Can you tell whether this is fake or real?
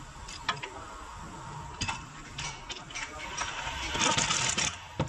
real